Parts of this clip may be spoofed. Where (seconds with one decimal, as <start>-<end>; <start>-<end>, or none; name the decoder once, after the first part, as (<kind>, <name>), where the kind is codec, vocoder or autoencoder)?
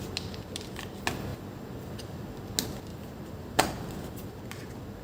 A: 2.9-4.4 (vocoder, BigVGAN v2)